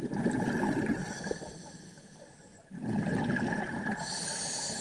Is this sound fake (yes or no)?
no